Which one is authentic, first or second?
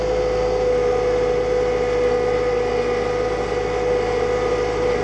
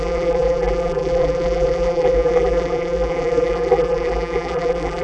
first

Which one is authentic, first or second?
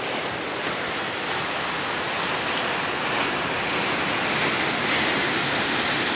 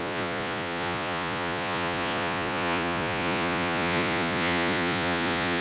first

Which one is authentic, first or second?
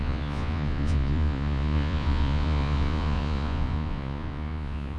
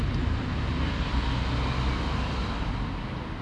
second